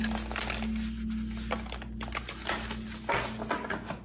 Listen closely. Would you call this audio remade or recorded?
recorded